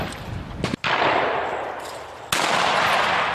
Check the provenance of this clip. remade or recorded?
recorded